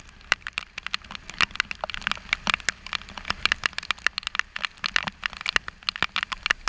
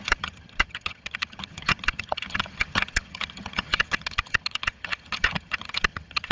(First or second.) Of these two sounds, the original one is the first